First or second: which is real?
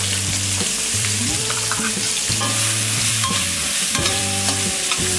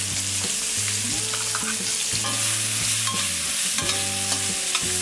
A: second